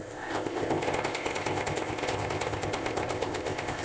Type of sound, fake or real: fake